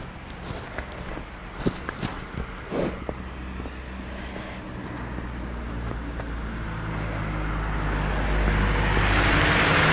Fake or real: real